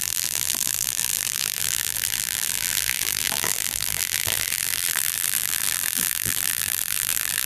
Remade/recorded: remade